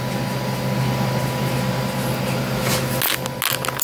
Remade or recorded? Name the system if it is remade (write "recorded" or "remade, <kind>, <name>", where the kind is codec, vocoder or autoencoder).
recorded